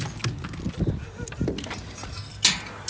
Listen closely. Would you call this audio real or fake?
real